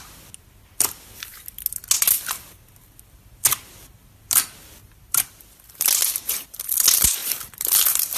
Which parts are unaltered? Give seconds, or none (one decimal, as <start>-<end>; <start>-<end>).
0.0-4.8; 6.7-7.2